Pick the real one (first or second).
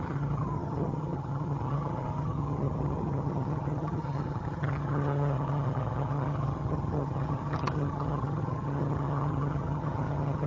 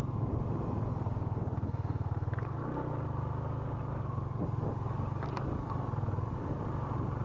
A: second